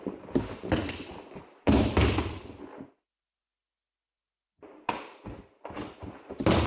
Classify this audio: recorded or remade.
recorded